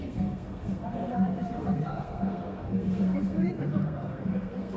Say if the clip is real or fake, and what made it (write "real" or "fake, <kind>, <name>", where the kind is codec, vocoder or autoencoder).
fake, codec, SNAC